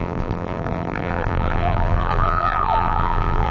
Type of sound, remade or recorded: remade